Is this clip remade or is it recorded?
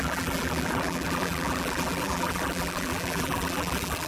remade